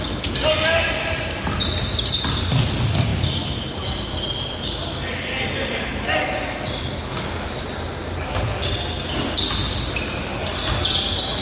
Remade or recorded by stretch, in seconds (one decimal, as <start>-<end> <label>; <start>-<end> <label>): 0.0-11.4 recorded